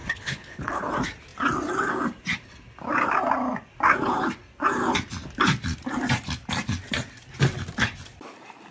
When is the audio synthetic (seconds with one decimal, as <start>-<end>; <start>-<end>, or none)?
0.0-0.9